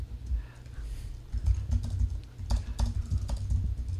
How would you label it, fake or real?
real